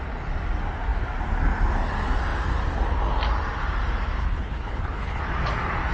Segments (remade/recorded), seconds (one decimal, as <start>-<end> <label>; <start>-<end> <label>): 0.0-4.2 recorded; 4.2-5.2 remade; 5.2-5.9 recorded